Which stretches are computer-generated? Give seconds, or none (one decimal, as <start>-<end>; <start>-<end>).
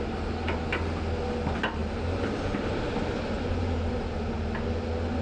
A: none